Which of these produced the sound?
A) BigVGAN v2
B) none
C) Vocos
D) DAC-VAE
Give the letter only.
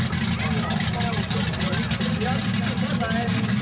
B